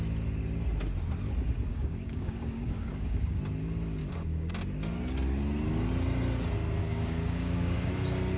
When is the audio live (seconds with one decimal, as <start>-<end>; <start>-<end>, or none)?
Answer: 0.0-1.7; 3.4-4.0; 4.5-6.8; 7.9-8.4